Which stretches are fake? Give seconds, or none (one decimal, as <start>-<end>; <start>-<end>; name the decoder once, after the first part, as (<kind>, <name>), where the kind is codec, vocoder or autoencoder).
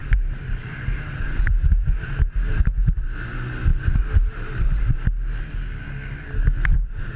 0.0-2.1 (vocoder, BigVGAN v2); 3.7-5.1